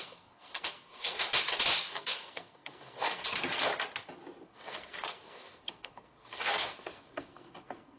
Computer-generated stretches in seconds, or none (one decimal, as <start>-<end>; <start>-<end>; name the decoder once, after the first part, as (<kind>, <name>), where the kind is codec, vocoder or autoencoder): 0.0-1.3 (codec, SNAC); 1.9-3.7; 4.5-8.0